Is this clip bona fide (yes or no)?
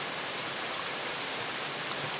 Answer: no